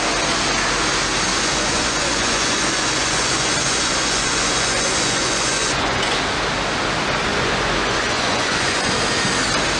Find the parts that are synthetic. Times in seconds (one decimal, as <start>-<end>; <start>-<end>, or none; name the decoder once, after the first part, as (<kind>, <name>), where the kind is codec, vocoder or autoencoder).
1.3-6.2 (vocoder, Vocos); 7.3-8.9